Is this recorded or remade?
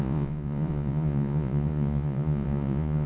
remade